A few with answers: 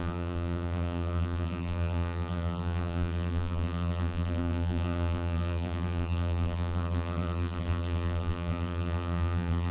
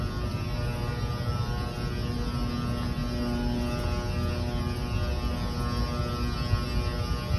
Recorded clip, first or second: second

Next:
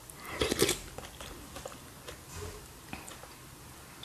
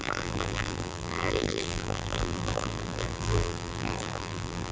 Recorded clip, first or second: first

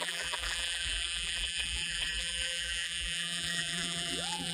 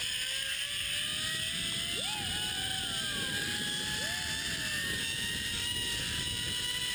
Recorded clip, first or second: second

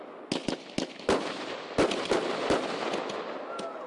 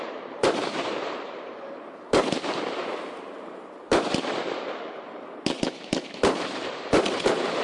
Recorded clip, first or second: first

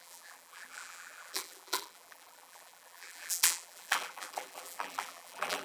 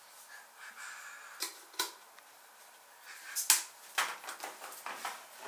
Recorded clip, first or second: second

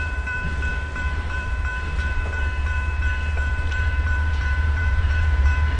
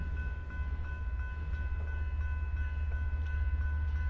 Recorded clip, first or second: second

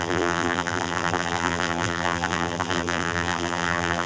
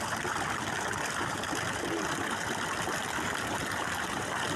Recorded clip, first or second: second